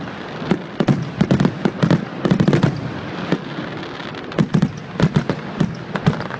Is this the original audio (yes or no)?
yes